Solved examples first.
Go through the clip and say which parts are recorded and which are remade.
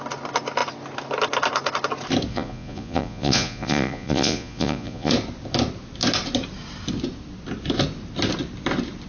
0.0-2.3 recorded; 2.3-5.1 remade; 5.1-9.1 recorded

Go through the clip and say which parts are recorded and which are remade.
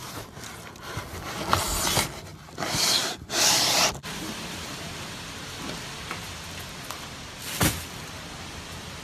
0.0-2.3 recorded; 2.3-7.3 remade; 7.3-9.0 recorded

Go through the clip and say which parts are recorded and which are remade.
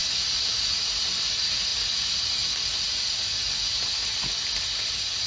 0.0-5.3 recorded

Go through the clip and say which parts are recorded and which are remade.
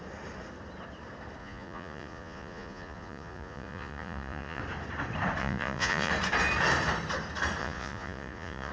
0.0-1.4 recorded; 1.4-4.6 remade; 4.6-5.4 recorded; 5.4-6.1 remade; 6.1-7.6 recorded; 7.6-8.7 remade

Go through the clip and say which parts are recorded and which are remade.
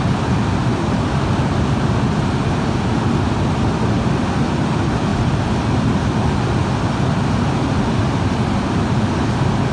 0.0-9.7 recorded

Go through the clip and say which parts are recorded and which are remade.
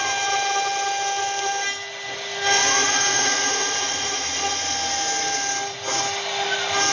0.0-2.8 recorded; 2.8-4.3 remade; 4.3-6.9 recorded